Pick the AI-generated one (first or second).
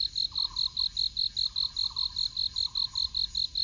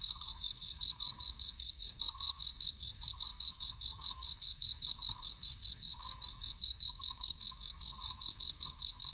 second